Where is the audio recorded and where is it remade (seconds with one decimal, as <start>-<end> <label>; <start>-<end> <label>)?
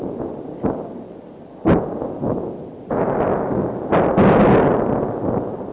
0.0-3.6 recorded; 3.6-4.4 remade; 4.4-5.7 recorded